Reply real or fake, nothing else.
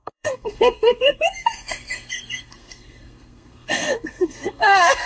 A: fake